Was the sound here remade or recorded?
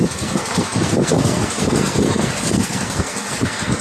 remade